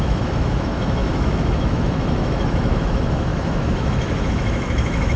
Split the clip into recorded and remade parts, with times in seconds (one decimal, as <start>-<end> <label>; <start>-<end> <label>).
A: 0.0-5.2 remade